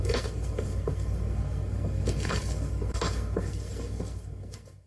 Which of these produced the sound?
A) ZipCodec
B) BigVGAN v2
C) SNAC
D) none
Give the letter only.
C